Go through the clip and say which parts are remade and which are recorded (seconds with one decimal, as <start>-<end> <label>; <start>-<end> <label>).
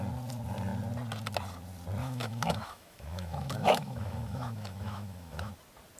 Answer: 0.0-2.0 recorded; 2.0-5.5 remade; 5.5-6.0 recorded